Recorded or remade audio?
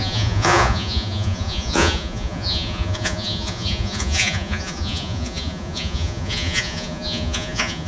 remade